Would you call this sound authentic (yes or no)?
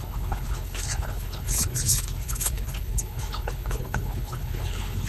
no